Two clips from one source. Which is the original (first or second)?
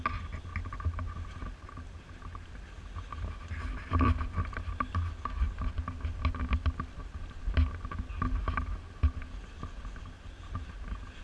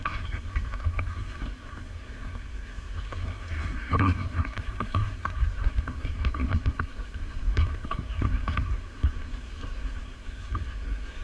first